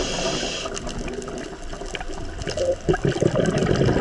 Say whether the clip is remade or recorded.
recorded